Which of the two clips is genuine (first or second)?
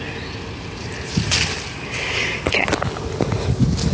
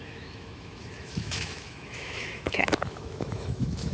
first